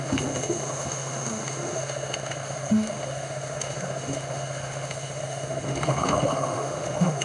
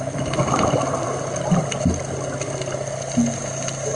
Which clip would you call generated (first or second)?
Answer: first